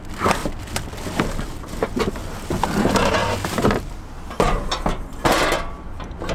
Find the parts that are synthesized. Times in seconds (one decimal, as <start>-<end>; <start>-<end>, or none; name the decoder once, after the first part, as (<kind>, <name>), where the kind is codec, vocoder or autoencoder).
0.4-2.1 (vocoder, BigVGAN v2)